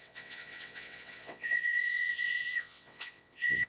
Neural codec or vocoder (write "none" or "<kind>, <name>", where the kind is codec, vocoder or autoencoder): vocoder, WaveNeXt